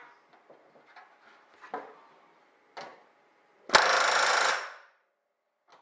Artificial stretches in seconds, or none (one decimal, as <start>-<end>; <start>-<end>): none